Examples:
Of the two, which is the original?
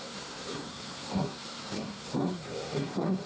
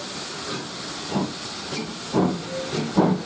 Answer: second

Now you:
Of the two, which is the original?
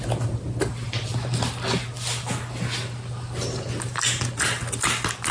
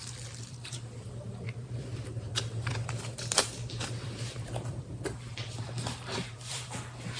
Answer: first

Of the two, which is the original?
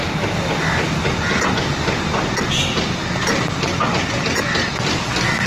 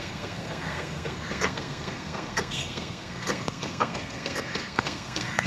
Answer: first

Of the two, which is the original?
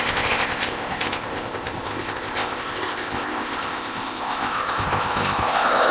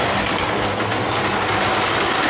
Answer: second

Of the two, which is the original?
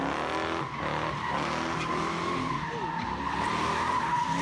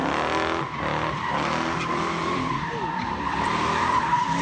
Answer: first